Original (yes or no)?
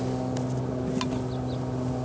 yes